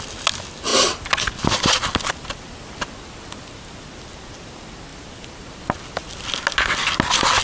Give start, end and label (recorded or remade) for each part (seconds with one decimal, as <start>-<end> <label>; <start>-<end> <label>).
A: 0.0-7.4 recorded